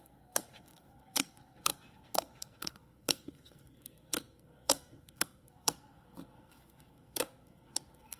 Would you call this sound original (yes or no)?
no